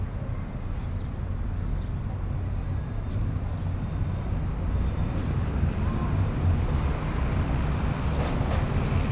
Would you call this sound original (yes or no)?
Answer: yes